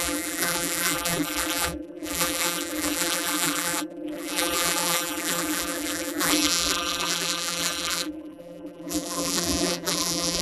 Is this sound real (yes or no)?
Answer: no